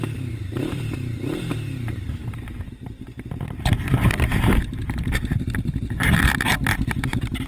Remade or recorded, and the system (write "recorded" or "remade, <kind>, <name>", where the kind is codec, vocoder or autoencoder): remade, vocoder, BigVGAN v2